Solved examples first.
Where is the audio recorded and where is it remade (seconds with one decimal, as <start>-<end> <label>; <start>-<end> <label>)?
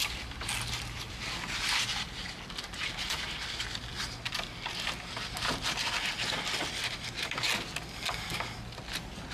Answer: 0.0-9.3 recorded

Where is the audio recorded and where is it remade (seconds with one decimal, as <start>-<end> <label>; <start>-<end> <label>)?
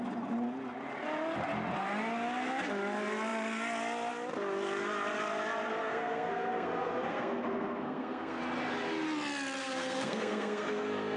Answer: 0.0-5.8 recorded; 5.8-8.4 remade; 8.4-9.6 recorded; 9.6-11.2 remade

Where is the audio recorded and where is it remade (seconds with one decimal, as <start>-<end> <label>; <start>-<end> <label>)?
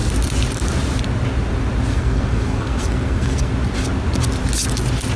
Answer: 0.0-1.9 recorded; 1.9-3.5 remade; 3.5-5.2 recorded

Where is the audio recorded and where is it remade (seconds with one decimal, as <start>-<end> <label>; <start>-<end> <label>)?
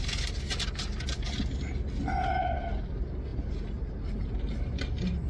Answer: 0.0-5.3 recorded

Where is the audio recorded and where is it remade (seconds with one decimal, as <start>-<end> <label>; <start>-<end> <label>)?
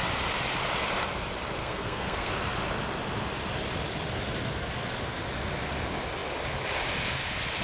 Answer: 0.0-1.6 recorded; 1.6-2.3 remade; 2.3-7.6 recorded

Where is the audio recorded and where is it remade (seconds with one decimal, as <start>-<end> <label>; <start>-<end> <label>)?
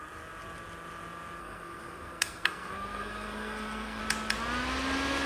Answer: 0.0-1.4 recorded; 1.4-4.0 remade; 4.0-5.3 recorded